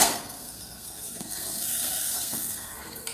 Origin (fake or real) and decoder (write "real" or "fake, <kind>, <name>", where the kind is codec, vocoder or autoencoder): fake, codec, SNAC